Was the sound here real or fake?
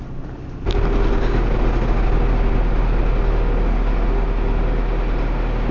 real